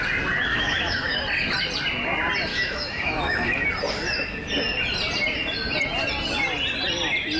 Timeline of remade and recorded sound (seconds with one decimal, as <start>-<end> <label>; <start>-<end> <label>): 0.0-0.5 recorded; 0.5-1.2 remade; 1.2-2.5 recorded; 2.5-3.7 remade; 3.7-7.4 recorded